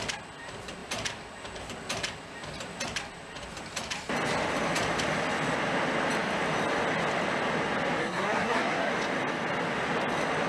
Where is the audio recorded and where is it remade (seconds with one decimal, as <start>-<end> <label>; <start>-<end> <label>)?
0.0-8.0 recorded; 8.0-8.9 remade; 8.9-10.5 recorded